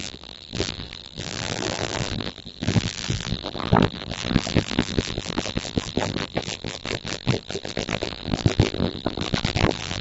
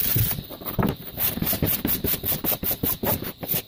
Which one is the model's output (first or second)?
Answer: first